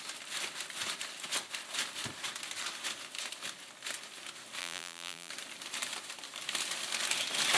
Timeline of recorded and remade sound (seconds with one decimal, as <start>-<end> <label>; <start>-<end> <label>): 0.0-4.6 recorded; 4.6-5.3 remade; 5.3-7.6 recorded